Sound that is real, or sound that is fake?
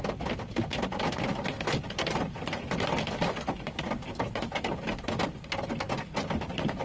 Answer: real